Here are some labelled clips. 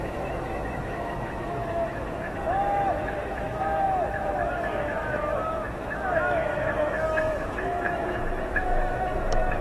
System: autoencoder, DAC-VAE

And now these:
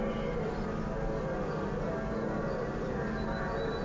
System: none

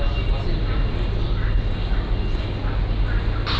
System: none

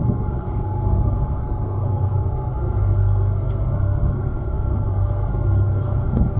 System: codec, SNAC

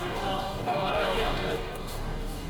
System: codec, DAC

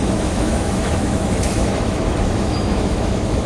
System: autoencoder, DAC-VAE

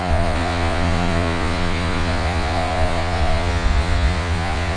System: vocoder, Vocos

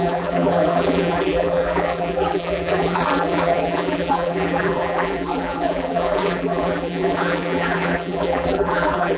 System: vocoder, BigVGAN v2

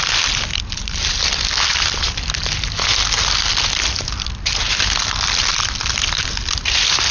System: none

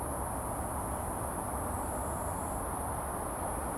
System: none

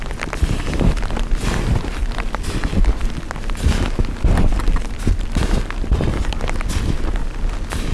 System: none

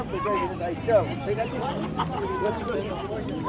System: none